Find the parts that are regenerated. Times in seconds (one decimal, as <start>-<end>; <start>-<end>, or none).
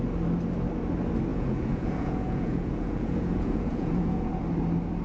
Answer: 1.3-4.3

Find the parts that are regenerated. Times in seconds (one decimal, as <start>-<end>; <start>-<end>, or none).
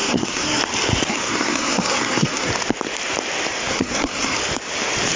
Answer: 0.0-0.6; 1.1-2.5; 3.7-4.4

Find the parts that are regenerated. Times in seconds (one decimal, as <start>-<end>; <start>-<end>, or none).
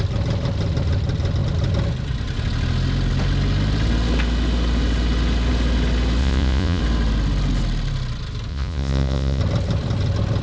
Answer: 6.2-6.8; 8.5-9.4